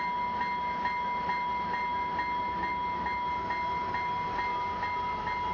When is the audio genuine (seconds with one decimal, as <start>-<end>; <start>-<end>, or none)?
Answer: 0.0-5.5